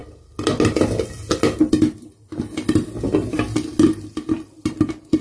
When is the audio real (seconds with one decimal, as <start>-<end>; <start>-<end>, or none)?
0.0-5.2